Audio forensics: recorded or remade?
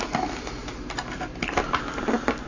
recorded